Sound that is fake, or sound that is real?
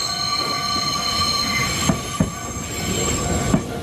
real